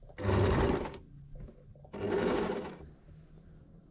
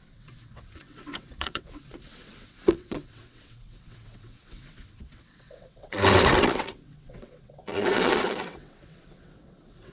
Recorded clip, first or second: first